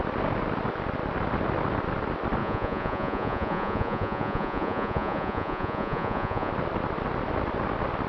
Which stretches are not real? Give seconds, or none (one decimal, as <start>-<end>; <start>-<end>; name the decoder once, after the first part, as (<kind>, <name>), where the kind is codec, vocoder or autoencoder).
2.4-6.5 (vocoder, Vocos)